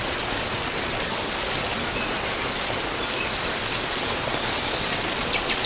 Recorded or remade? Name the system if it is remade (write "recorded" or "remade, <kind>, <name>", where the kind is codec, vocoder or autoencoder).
recorded